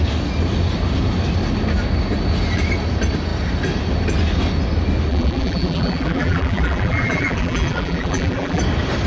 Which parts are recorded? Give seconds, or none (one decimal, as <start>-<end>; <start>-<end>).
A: 0.0-5.1; 8.6-9.1